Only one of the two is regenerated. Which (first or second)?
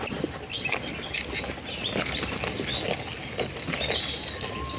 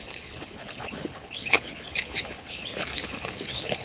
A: second